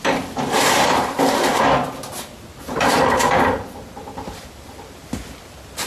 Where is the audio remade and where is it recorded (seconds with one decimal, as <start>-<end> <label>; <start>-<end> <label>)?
0.0-0.6 recorded; 0.6-1.5 remade; 1.5-2.5 recorded; 2.5-3.1 remade; 3.1-5.9 recorded